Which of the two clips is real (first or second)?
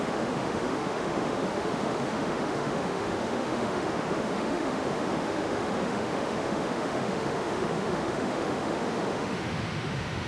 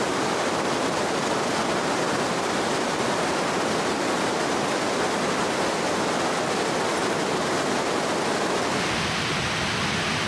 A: second